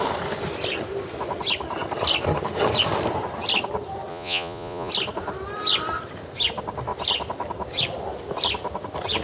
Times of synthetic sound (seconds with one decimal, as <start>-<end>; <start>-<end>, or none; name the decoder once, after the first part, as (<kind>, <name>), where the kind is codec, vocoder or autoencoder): 4.1-4.9 (vocoder, Vocos)